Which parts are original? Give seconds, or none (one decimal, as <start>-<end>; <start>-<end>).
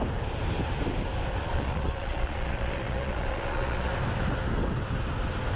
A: 0.0-1.4; 3.9-5.5